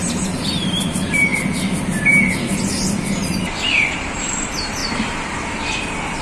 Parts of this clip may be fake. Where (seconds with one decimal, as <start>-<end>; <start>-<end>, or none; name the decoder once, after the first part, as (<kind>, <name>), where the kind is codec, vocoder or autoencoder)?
0.0-1.3 (vocoder, BigVGAN v2); 3.7-4.8